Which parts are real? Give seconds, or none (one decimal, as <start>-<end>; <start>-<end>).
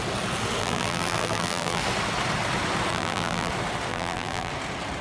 0.0-0.6; 1.8-2.9; 3.5-3.9; 4.5-5.0